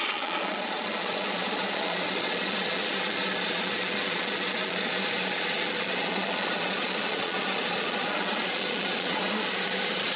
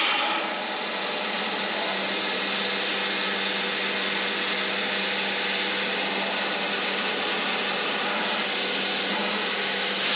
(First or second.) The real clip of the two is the second